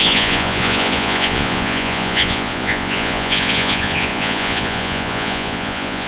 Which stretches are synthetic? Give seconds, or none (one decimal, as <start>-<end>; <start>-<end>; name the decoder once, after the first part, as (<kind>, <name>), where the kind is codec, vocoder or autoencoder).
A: 0.0-6.1 (vocoder, Vocos)

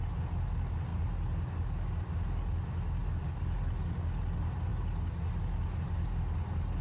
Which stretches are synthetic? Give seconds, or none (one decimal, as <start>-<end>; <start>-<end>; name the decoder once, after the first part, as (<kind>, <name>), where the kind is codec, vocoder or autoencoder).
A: none

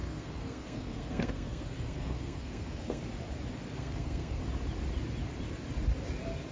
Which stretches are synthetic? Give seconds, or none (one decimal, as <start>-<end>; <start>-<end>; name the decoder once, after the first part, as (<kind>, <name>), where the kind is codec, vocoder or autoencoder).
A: 0.0-3.0 (codec, SNAC); 3.8-4.4

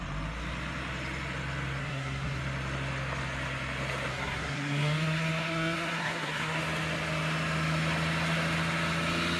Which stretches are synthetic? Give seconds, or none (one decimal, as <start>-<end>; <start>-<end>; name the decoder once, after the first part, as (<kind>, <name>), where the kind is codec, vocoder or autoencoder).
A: 1.8-2.4 (codec, SNAC); 4.1-6.6

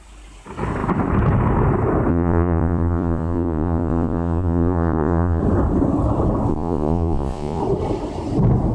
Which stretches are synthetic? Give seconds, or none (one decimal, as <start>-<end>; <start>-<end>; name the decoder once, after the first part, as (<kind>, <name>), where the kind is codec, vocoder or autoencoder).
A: 2.1-5.4 (vocoder, Vocos); 6.5-7.6

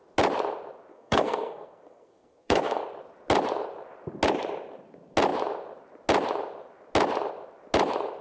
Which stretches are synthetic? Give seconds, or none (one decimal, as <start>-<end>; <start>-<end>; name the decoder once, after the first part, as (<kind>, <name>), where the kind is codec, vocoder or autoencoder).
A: 0.9-2.8 (codec, SNAC)

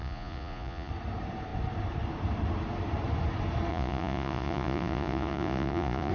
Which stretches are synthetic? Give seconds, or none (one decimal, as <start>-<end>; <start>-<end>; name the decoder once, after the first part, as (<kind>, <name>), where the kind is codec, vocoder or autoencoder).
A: 0.0-0.9 (vocoder, Vocos); 3.7-6.1

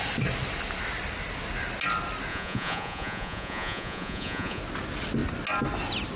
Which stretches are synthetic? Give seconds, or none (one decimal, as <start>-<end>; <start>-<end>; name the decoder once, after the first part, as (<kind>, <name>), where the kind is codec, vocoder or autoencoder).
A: 2.3-4.6 (vocoder, Vocos)